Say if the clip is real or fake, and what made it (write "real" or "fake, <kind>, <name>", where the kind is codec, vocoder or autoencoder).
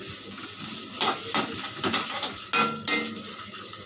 real